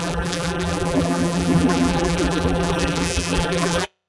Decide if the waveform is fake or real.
fake